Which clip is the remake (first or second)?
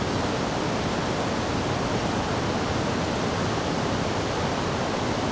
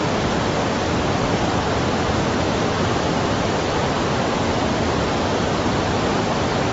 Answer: second